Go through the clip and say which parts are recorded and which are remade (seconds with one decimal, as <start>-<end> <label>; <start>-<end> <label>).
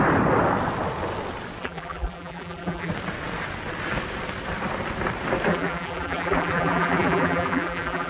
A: 0.0-1.6 recorded; 1.6-2.9 remade; 2.9-5.5 recorded; 5.5-8.1 remade